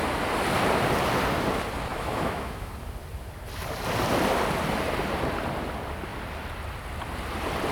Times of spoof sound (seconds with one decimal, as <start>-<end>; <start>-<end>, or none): 1.9-2.7